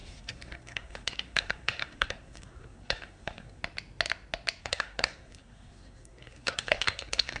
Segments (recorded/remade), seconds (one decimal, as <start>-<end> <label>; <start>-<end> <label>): 0.0-3.6 remade; 3.6-4.6 recorded; 4.6-7.4 remade